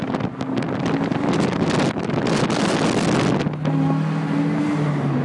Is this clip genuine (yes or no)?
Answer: yes